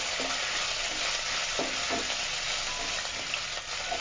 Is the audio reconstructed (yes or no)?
no